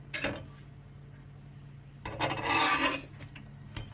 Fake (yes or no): no